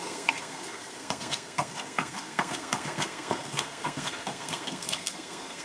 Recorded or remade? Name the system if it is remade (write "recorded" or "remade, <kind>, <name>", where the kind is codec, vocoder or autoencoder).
remade, codec, SNAC